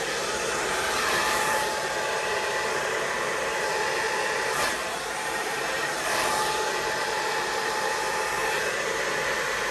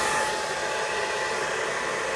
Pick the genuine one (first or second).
second